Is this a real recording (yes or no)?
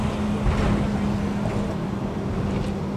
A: yes